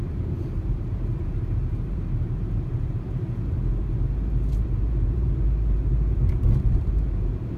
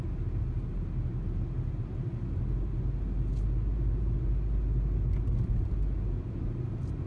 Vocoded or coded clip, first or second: first